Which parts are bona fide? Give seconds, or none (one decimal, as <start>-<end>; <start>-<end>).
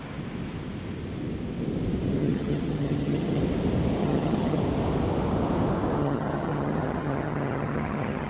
0.0-2.2; 3.4-4.0; 4.6-6.0